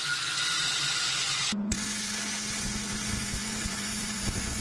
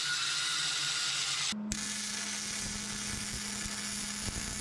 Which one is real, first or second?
second